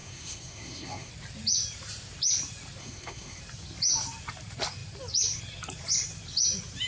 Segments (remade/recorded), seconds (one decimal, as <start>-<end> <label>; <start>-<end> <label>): 0.0-1.1 remade; 1.1-2.8 recorded; 2.8-3.4 remade; 3.4-6.9 recorded